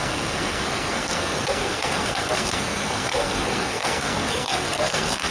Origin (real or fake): fake